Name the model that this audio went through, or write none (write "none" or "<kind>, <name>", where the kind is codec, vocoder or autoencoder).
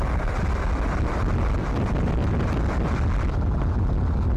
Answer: none